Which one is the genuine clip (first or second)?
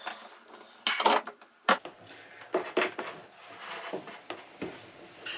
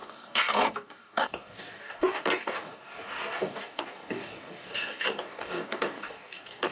first